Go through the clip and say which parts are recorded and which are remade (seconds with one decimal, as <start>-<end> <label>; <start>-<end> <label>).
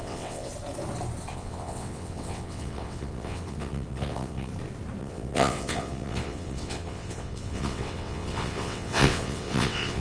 0.0-0.5 remade; 0.5-1.3 recorded; 1.3-4.5 remade; 4.5-5.0 recorded; 5.0-10.0 remade